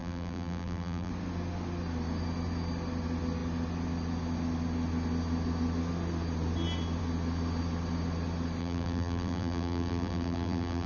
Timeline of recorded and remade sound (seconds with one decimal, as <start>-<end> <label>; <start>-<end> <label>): 0.0-1.1 remade; 1.1-8.6 recorded; 8.6-10.9 remade